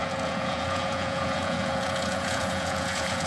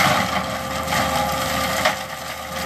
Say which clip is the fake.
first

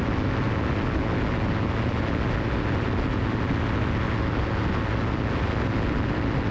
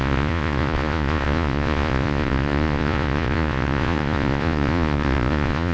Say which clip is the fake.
second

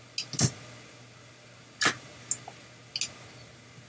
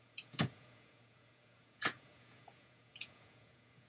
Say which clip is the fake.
second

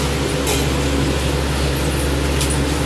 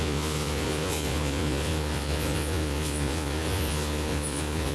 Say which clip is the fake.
second